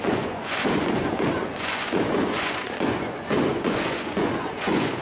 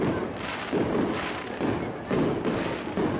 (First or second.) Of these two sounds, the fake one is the first